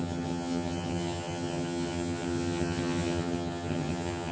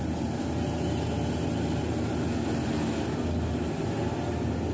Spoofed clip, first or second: first